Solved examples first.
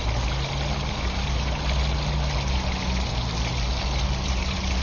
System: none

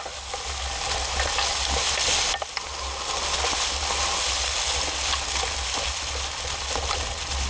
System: none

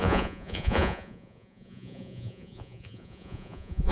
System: vocoder, Vocos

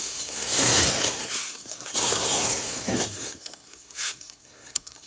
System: codec, SNAC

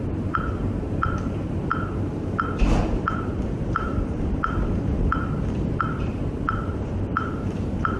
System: vocoder, BigVGAN v2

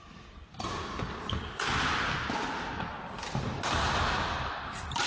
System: none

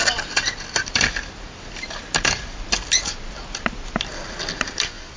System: none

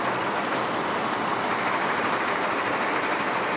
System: none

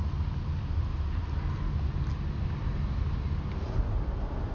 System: none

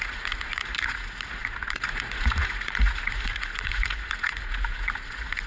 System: vocoder, Vocos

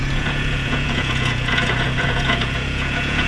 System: vocoder, Vocos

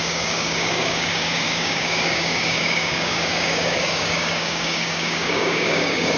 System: codec, DAC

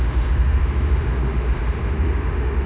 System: autoencoder, DAC-VAE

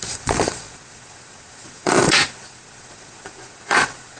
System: vocoder, Vocos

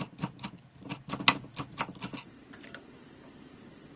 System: none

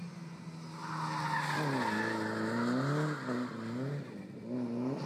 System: none